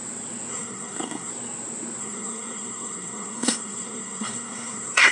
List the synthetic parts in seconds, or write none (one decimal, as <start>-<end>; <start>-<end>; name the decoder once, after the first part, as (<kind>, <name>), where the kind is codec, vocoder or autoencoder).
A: 0.5-1.3 (codec, SNAC); 2.0-5.1